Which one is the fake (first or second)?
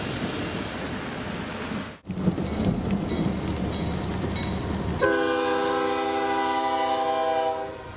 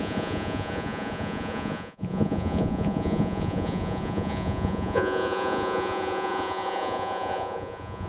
second